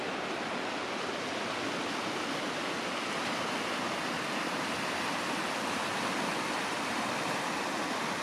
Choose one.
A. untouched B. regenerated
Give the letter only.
A